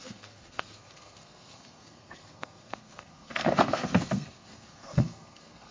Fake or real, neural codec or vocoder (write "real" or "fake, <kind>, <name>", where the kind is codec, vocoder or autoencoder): fake, codec, SNAC